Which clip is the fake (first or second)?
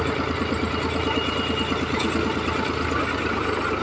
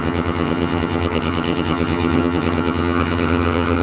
second